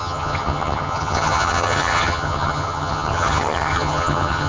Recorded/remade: remade